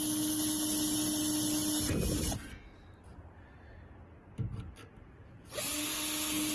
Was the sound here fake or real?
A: real